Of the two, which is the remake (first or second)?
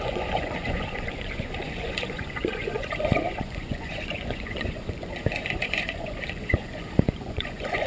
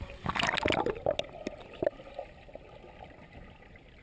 first